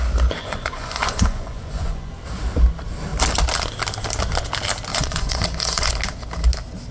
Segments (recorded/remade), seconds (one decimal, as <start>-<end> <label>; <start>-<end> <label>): 0.0-0.4 recorded; 0.4-2.1 remade; 2.1-4.9 recorded; 4.9-5.9 remade; 5.9-6.9 recorded